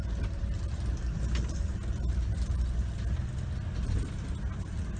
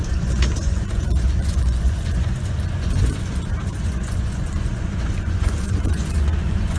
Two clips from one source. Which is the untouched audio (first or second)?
first